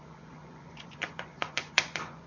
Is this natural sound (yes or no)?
no